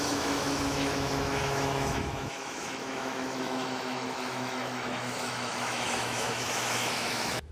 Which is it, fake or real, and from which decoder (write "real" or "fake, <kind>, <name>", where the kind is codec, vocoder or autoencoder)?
fake, autoencoder, DAC-VAE